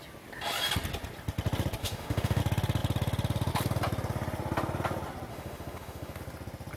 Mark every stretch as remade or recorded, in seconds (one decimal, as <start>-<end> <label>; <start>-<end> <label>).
0.0-1.8 recorded; 1.8-2.4 remade; 2.4-5.3 recorded; 5.3-6.2 remade; 6.2-6.8 recorded